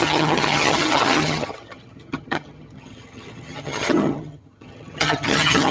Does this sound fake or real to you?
fake